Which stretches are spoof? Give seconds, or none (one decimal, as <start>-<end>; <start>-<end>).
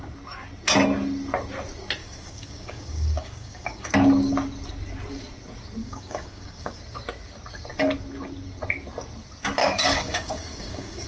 2.0-3.9; 5.8-6.8; 9.6-11.1